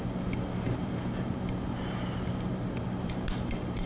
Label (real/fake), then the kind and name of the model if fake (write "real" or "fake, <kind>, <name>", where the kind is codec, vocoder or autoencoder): fake, vocoder, BigVGAN v2